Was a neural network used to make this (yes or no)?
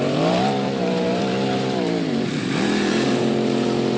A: yes